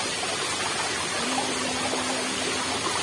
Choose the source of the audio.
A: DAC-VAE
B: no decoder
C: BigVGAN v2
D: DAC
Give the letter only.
B